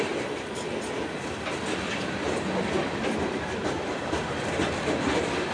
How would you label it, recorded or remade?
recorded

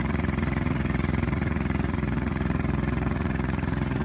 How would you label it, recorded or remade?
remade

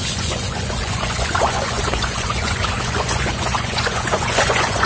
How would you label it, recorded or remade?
remade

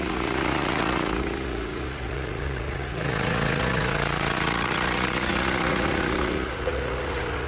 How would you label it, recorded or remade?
remade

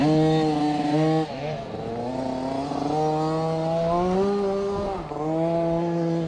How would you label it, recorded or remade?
recorded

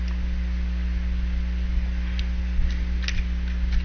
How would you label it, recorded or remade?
recorded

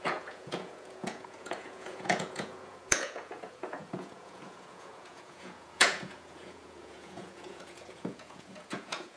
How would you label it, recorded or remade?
remade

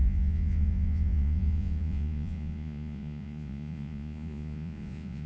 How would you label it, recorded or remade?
remade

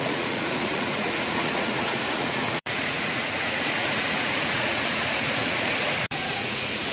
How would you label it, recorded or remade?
remade